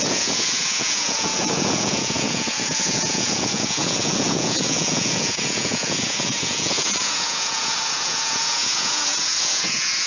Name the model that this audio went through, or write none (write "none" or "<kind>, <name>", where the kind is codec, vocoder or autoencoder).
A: vocoder, Vocos